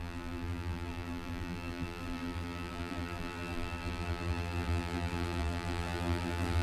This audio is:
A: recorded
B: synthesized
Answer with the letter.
B